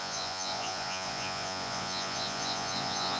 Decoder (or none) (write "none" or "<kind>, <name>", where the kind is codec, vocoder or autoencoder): vocoder, Vocos